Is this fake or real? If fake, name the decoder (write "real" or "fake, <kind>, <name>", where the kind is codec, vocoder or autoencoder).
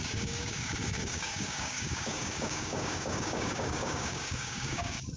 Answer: fake, codec, DAC